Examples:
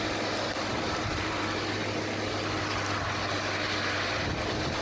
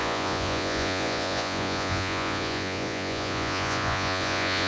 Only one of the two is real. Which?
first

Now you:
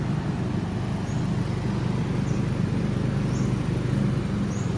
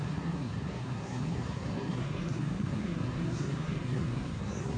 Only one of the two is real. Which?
first